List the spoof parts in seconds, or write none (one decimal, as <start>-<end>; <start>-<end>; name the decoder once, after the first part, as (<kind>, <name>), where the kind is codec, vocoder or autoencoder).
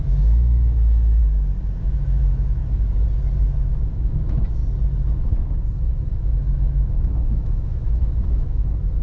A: 0.0-1.2 (autoencoder, DAC-VAE); 1.8-2.6; 3.9-4.6; 6.2-9.0